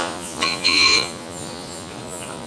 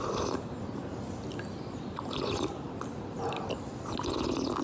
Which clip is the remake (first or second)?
first